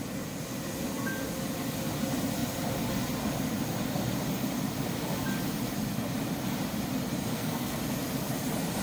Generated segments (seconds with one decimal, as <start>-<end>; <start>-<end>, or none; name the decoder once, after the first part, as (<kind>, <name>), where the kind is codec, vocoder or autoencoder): 7.3-7.8 (codec, SNAC)